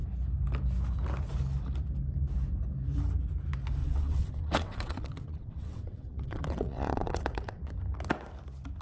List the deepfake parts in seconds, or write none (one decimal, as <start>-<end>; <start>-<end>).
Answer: 3.8-7.7